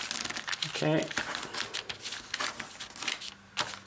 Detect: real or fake real